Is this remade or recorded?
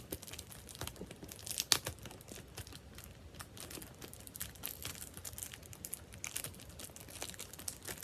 recorded